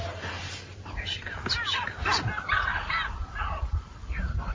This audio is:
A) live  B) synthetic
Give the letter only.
A